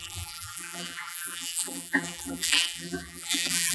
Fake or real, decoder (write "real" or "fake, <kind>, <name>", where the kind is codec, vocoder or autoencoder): fake, vocoder, BigVGAN v2